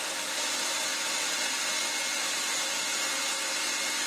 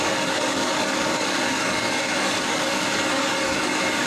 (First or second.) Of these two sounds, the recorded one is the first